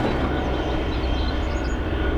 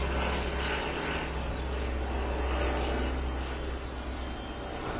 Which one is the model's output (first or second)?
first